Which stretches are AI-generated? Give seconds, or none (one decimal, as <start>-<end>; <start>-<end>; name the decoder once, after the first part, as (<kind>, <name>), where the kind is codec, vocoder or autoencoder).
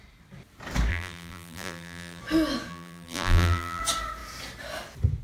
0.9-2.2 (vocoder, BigVGAN v2); 2.7-3.8